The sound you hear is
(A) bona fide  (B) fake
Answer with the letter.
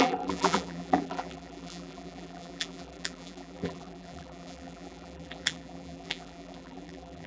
B